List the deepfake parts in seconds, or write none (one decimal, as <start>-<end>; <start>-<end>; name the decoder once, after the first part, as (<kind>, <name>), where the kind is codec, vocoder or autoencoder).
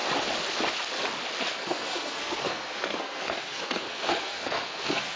1.4-5.2 (codec, SNAC)